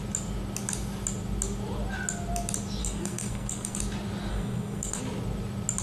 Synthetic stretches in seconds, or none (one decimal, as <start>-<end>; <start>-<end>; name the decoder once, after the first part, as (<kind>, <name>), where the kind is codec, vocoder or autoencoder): 2.8-3.8 (codec, SNAC); 4.3-5.0